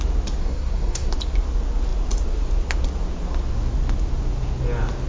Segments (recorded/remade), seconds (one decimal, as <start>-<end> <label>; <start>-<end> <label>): 0.0-0.4 recorded; 0.4-1.1 remade; 1.1-5.1 recorded

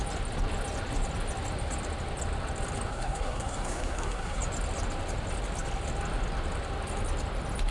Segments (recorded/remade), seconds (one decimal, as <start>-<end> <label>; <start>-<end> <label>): 0.0-2.9 recorded; 2.9-4.4 remade; 4.4-7.7 recorded

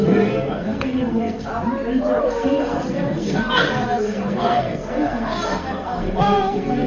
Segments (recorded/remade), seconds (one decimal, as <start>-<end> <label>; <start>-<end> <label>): 0.0-1.5 remade; 1.5-2.2 recorded; 2.2-6.9 remade

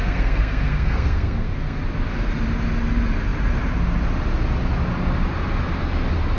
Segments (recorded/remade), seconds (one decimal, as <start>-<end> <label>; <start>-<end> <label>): 0.0-1.8 remade; 1.8-6.4 recorded

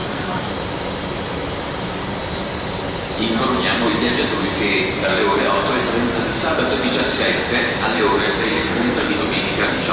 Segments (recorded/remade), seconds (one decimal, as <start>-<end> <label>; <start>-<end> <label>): 0.0-0.5 remade; 0.5-8.5 recorded; 8.5-9.1 remade; 9.1-9.9 recorded